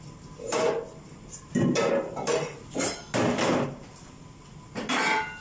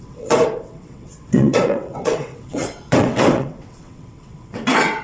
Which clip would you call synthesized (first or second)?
second